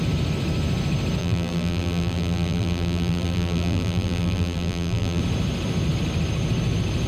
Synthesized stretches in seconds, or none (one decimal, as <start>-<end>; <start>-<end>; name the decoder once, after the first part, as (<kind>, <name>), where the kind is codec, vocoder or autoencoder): 1.2-5.2 (vocoder, BigVGAN v2)